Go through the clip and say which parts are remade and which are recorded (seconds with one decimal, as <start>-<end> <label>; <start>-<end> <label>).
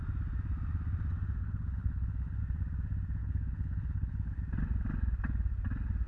0.0-1.4 recorded; 1.4-2.4 remade; 2.4-3.2 recorded; 3.2-4.4 remade; 4.4-6.1 recorded